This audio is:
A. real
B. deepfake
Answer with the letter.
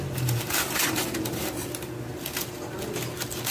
A